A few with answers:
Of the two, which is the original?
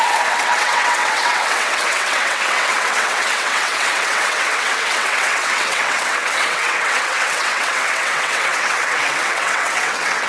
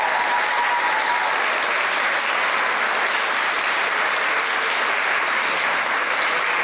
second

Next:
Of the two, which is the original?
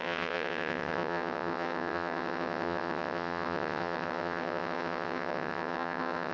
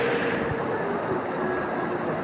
second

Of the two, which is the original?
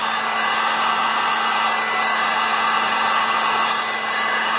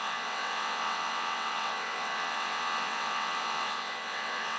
first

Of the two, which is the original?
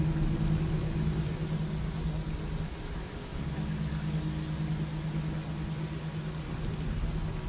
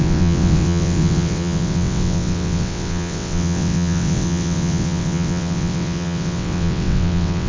first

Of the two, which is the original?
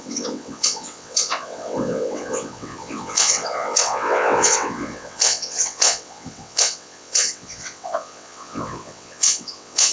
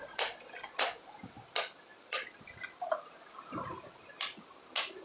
second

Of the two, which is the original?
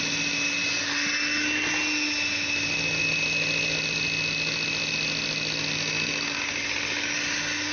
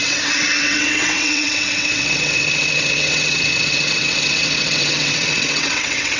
first